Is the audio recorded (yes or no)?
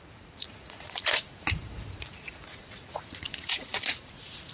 no